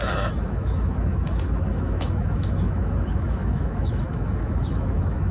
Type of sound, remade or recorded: remade